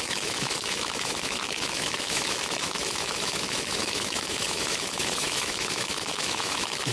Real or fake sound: fake